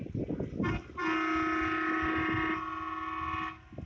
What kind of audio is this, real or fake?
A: real